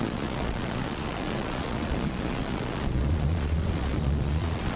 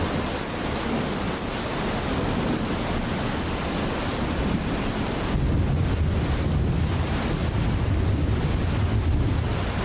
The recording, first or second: second